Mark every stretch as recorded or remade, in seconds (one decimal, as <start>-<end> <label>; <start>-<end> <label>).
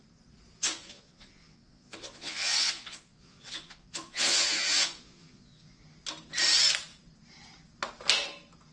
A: 0.0-0.6 recorded; 0.6-5.8 remade; 5.8-8.7 recorded